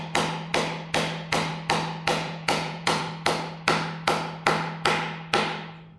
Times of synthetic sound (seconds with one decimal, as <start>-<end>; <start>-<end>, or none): 2.1-3.0